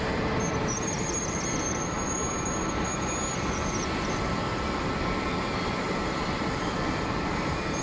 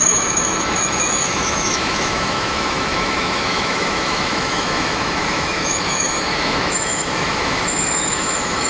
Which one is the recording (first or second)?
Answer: first